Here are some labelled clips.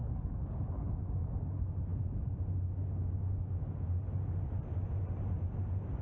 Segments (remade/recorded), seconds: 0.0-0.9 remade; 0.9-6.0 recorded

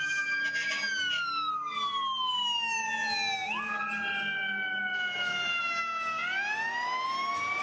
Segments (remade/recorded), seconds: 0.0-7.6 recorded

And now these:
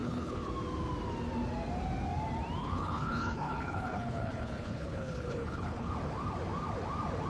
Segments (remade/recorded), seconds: 0.0-0.5 remade; 0.5-2.6 recorded; 2.6-5.9 remade; 5.9-7.3 recorded